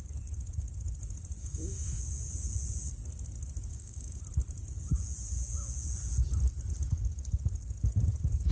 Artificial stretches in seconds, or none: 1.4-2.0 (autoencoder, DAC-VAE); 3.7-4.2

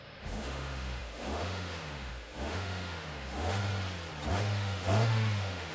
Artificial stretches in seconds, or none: 0.0-3.6 (autoencoder, DAC-VAE); 4.3-5.7

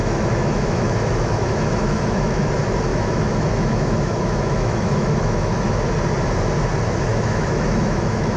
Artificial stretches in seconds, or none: 0.0-2.5 (autoencoder, DAC-VAE); 2.9-5.8; 7.1-8.4

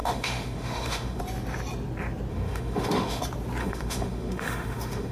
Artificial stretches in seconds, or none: 0.0-1.2 (autoencoder, DAC-VAE); 2.3-3.2; 3.6-5.1